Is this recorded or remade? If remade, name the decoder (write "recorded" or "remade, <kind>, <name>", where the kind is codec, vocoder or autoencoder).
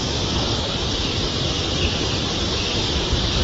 recorded